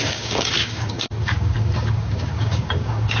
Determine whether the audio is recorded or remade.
remade